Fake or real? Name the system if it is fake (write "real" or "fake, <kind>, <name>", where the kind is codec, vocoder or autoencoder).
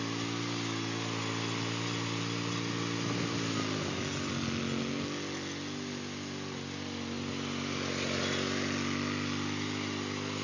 real